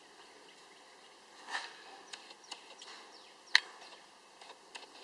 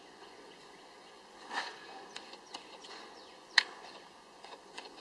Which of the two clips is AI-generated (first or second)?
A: second